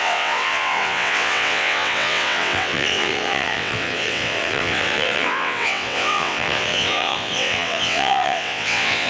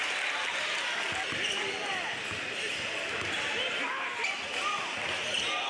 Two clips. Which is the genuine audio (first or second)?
second